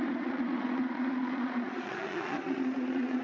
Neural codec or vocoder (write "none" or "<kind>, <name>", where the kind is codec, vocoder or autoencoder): vocoder, Vocos